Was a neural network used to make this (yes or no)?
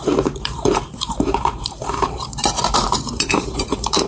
yes